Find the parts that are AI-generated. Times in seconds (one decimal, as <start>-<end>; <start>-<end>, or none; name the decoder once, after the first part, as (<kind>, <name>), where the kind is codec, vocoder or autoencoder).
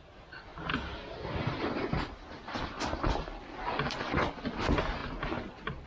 none